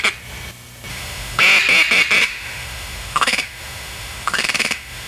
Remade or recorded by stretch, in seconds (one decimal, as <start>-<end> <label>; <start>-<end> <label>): 0.0-0.9 recorded; 0.9-1.4 remade; 1.4-2.2 recorded; 2.2-5.1 remade